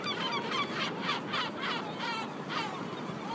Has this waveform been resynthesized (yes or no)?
yes